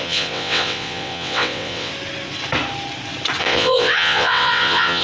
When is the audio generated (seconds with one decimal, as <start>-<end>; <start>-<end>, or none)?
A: 0.0-1.9; 3.4-5.0